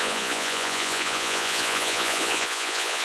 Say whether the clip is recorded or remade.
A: remade